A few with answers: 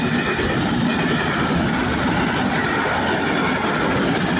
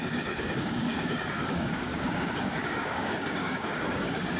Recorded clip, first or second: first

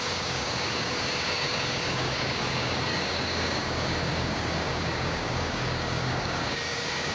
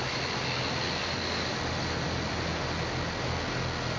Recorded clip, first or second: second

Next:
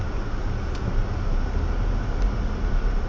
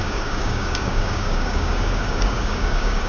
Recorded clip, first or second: first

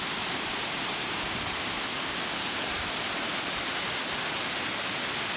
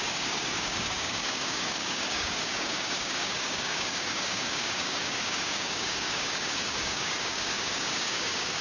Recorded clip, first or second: first